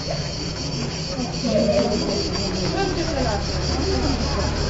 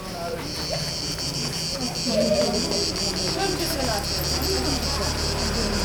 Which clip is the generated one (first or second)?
first